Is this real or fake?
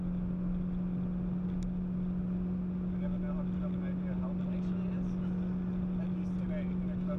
real